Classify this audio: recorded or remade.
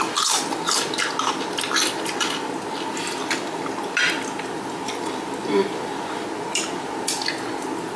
recorded